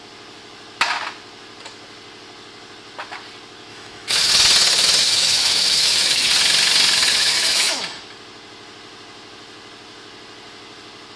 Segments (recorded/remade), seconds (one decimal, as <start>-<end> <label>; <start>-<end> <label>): 0.0-3.7 recorded; 3.7-4.3 remade; 4.3-5.0 recorded; 5.0-6.3 remade; 6.3-7.1 recorded; 7.1-7.8 remade; 7.8-11.2 recorded

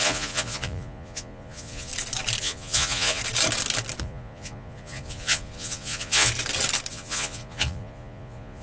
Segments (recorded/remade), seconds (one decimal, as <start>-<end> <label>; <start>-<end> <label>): 0.0-1.9 remade; 1.9-2.4 recorded; 2.4-3.2 remade; 3.2-4.0 recorded; 4.0-6.3 remade; 6.3-6.9 recorded; 6.9-8.6 remade

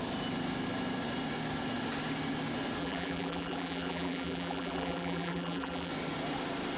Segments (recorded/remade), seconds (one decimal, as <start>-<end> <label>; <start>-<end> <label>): 0.0-2.8 recorded; 2.8-5.9 remade; 5.9-6.8 recorded

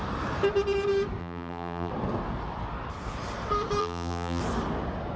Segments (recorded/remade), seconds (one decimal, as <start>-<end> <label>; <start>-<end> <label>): 0.0-1.2 recorded; 1.2-1.9 remade; 1.9-3.8 recorded; 3.8-4.4 remade; 4.4-5.2 recorded